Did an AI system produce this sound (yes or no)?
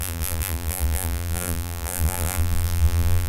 yes